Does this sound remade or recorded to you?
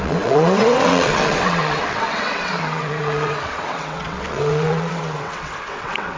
remade